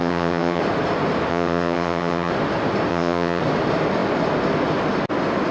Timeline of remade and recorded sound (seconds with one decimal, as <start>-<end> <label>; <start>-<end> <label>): 0.0-0.6 remade; 0.6-1.3 recorded; 1.3-2.3 remade; 2.3-2.9 recorded; 2.9-3.4 remade; 3.4-5.5 recorded